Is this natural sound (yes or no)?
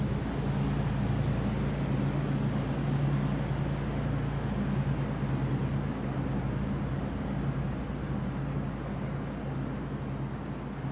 yes